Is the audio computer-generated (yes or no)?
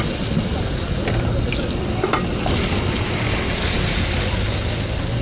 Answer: no